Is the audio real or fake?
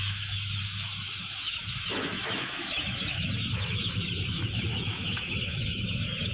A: fake